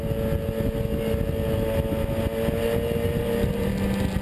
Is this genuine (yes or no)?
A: yes